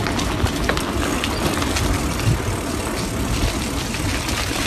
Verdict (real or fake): real